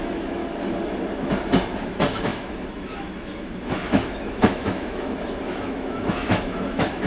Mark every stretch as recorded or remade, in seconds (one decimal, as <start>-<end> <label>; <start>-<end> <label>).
0.0-0.4 remade; 0.4-1.8 recorded; 1.8-7.1 remade